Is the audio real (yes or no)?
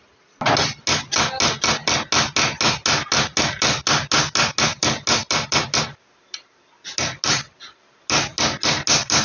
yes